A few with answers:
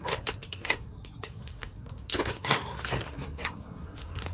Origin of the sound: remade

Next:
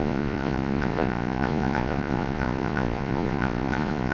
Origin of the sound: remade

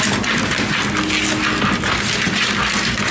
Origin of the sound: recorded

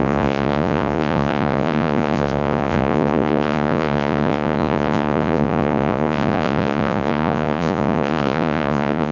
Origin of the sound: remade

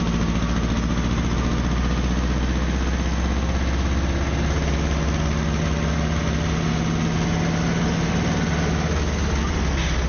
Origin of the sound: recorded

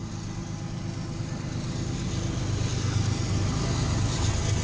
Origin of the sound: recorded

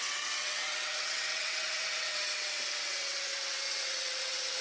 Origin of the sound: remade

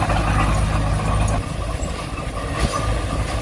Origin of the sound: recorded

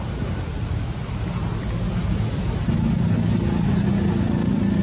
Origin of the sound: recorded